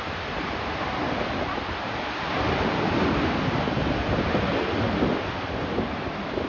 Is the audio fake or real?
real